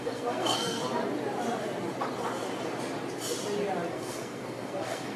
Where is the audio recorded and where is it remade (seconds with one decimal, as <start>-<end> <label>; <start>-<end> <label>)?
0.0-0.8 remade; 0.8-3.9 recorded; 3.9-5.2 remade